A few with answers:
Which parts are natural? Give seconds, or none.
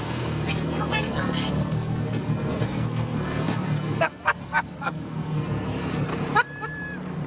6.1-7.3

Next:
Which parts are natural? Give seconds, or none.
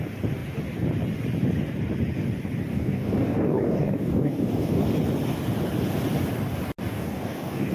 0.0-2.7; 4.8-6.9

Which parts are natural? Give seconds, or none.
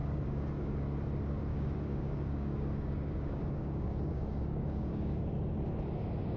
0.7-1.5; 5.2-6.4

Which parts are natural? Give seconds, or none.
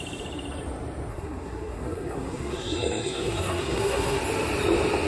0.0-1.1; 4.2-5.1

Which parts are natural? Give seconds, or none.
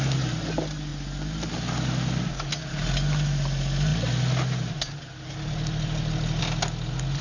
0.0-7.2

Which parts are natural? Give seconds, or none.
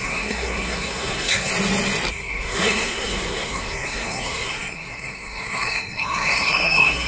1.5-2.1